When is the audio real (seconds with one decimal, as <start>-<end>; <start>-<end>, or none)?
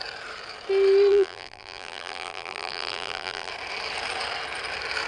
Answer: 0.0-1.1; 3.5-5.1